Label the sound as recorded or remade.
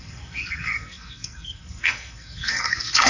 remade